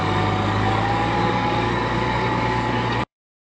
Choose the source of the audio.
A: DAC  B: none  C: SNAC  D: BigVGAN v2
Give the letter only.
A